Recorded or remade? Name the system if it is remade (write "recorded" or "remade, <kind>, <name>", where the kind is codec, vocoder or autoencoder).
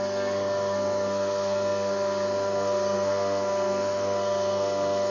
remade, codec, SNAC